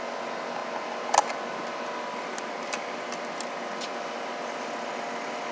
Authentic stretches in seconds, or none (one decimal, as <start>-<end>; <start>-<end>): 0.0-5.5